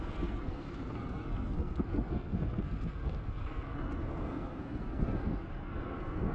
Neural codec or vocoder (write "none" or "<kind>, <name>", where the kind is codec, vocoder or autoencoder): codec, SNAC